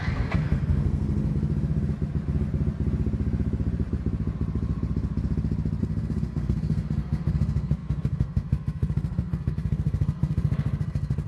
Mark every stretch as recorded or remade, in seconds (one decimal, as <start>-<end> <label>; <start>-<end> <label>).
0.0-1.3 remade; 1.3-5.8 recorded; 5.8-11.3 remade